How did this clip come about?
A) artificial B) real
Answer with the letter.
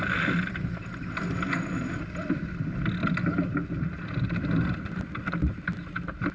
B